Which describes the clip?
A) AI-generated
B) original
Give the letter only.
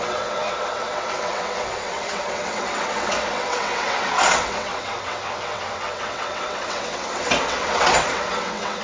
A